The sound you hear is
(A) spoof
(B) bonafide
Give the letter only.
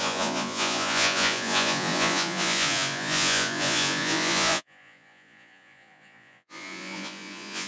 A